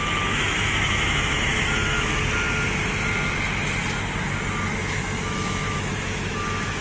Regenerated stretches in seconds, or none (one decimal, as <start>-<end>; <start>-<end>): 0.0-2.2; 4.8-6.8